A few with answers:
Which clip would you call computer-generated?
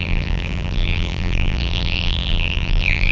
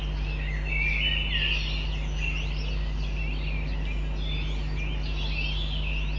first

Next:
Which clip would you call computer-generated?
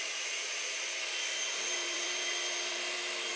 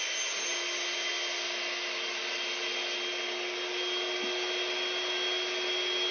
first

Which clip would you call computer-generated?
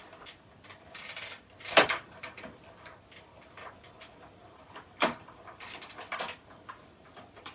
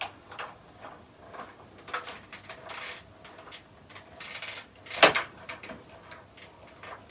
first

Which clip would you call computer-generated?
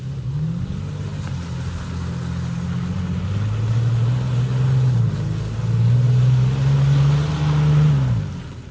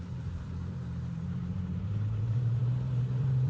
second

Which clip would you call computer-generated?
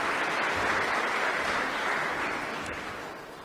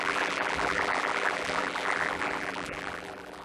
second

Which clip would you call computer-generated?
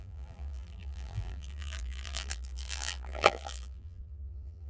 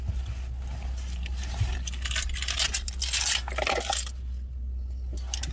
first